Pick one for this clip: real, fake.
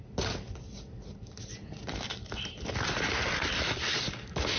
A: real